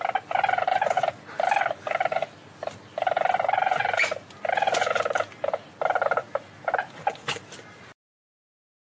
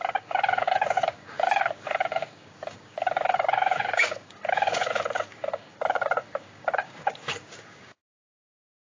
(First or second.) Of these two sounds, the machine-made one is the second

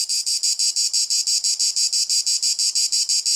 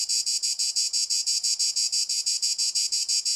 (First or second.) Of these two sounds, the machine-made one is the second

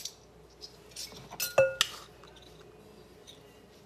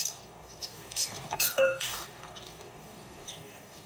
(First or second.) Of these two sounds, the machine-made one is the second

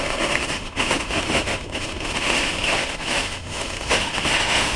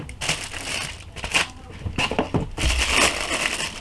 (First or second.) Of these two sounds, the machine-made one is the first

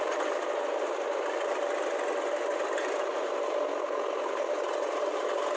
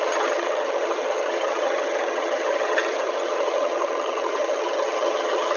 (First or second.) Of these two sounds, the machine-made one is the second